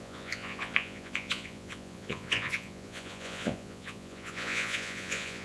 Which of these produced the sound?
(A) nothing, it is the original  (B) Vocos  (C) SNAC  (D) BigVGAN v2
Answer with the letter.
B